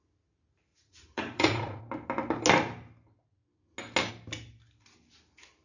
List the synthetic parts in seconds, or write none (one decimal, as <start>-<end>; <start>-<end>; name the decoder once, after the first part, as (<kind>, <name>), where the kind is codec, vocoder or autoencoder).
0.7-1.8 (vocoder, Vocos)